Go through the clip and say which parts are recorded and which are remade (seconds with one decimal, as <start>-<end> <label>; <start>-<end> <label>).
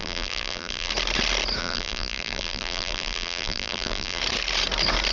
0.0-0.9 remade; 0.9-1.6 recorded; 1.6-4.2 remade; 4.2-5.1 recorded